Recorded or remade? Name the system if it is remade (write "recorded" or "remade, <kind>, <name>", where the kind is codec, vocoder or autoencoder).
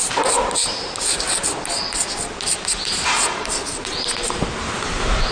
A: recorded